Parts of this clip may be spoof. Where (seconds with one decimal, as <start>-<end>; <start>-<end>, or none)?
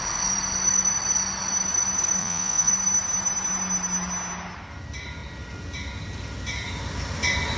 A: 2.2-2.7